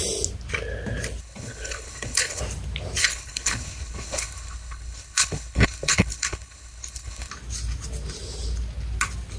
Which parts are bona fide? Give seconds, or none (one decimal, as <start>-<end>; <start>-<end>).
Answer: 0.0-1.2; 2.4-3.0; 7.3-9.4